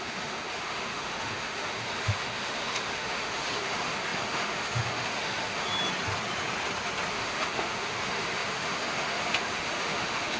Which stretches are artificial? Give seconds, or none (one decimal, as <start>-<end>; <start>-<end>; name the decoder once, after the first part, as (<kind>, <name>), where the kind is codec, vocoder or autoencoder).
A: 0.0-5.7 (autoencoder, DAC-VAE); 7.1-10.4